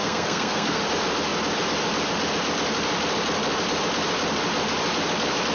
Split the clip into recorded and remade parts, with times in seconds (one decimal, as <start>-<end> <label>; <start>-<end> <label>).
0.0-0.8 remade; 0.8-5.5 recorded